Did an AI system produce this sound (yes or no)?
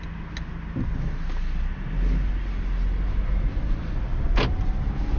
no